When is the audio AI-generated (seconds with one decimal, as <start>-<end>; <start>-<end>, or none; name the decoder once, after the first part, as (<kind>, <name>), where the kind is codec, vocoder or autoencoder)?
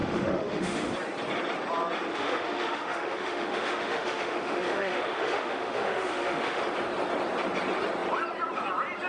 0.0-0.9 (autoencoder, DAC-VAE); 2.1-6.6